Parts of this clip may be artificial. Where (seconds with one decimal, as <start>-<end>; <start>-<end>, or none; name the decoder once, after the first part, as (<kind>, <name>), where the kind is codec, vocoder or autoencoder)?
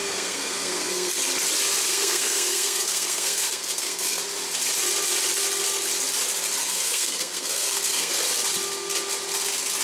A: 0.0-1.1 (codec, SNAC); 1.9-4.2; 6.6-8.1